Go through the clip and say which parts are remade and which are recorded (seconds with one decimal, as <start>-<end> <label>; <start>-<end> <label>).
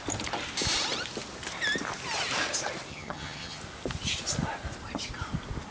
0.0-2.9 recorded; 2.9-3.6 remade; 3.6-5.7 recorded